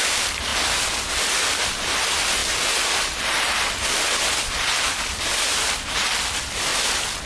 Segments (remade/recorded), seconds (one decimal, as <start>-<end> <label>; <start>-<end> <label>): 0.0-0.5 remade; 0.5-1.0 recorded; 1.0-2.4 remade; 2.4-3.0 recorded; 3.0-6.7 remade; 6.7-7.3 recorded